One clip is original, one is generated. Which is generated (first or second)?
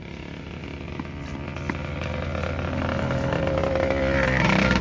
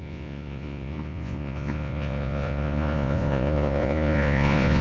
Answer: second